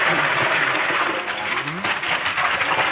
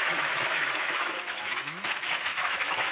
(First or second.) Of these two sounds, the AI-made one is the second